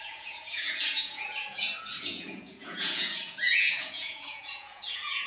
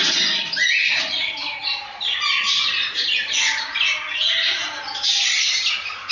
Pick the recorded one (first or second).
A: second